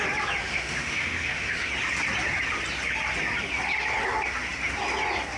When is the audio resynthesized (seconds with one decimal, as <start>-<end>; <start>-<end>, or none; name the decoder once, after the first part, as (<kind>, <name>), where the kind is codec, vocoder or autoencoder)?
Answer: 0.4-1.7 (autoencoder, DAC-VAE)